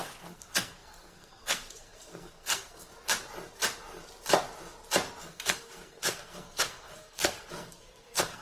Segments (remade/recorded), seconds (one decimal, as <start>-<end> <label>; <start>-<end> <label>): 0.0-2.9 remade; 2.9-5.2 recorded; 5.2-8.4 remade